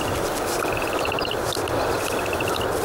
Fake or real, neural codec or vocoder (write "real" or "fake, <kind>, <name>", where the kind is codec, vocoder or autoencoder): real